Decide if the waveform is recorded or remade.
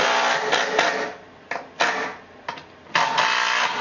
remade